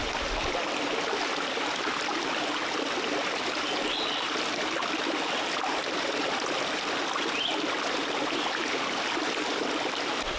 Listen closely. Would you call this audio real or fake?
real